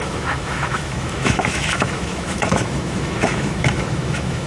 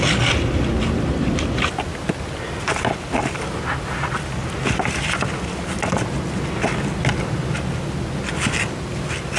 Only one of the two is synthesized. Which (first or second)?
first